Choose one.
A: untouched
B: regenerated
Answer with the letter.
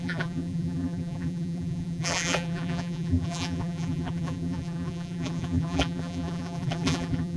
B